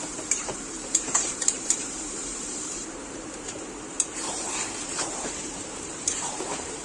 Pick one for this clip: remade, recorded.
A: remade